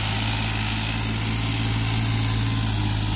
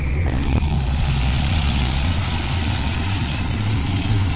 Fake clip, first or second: second